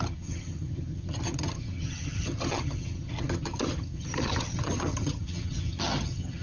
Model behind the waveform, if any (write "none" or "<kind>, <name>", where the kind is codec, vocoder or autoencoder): vocoder, HiFi-GAN